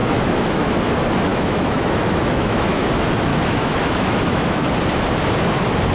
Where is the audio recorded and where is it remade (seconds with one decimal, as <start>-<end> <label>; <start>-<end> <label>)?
0.0-0.9 remade; 0.9-1.3 recorded; 1.3-2.8 remade; 2.8-3.3 recorded; 3.3-4.6 remade; 4.6-5.9 recorded